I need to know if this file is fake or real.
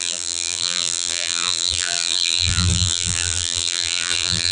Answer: fake